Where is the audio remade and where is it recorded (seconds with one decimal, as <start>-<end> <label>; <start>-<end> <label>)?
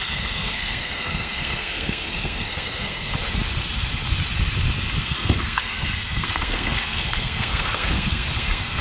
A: 0.0-3.1 remade; 3.1-5.0 recorded; 5.0-8.8 remade